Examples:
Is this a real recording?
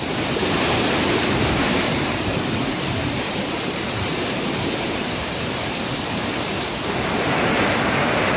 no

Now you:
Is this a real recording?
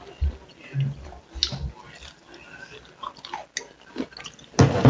yes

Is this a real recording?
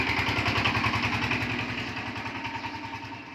yes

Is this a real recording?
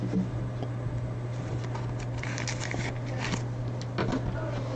yes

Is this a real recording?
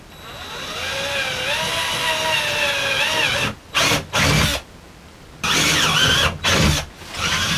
yes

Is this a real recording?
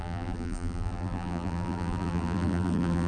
no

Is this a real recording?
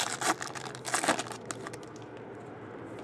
yes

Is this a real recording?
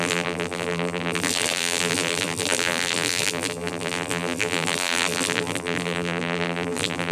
no